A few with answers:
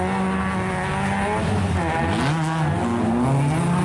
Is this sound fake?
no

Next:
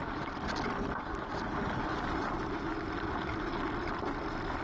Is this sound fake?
no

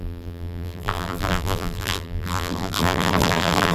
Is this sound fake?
yes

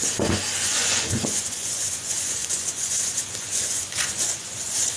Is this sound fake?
yes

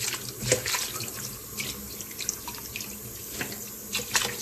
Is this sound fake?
no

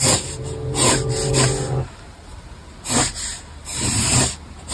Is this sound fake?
no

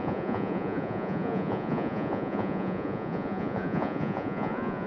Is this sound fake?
yes